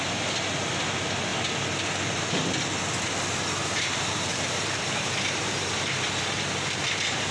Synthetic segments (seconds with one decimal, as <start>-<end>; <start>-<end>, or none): 3.6-5.7